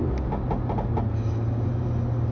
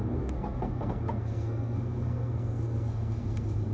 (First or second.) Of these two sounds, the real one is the first